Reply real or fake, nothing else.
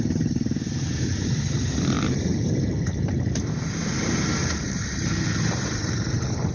fake